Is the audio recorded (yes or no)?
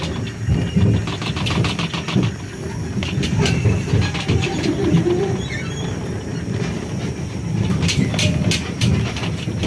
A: yes